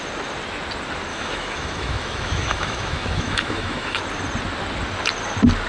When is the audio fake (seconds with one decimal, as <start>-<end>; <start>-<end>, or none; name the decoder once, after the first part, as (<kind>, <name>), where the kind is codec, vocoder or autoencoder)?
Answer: 1.1-4.0 (autoencoder, DAC-VAE)